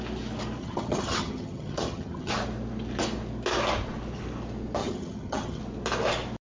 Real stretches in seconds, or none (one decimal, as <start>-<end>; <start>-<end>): 0.0-0.6; 2.3-4.8; 5.6-6.4